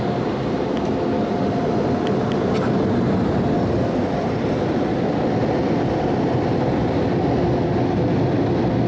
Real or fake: real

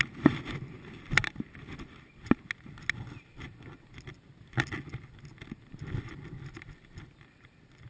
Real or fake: real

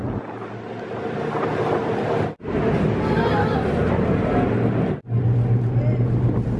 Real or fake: real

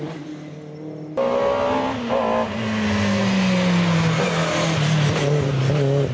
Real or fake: real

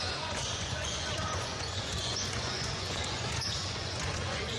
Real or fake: fake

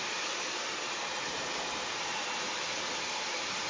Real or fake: real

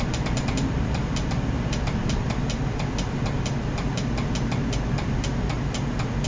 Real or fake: real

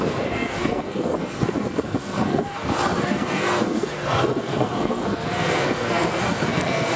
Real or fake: fake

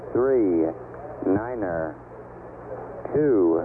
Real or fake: real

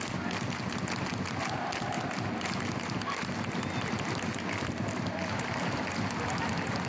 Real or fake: real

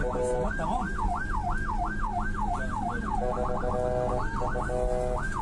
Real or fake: real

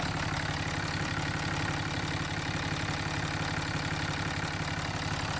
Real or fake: real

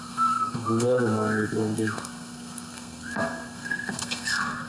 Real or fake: fake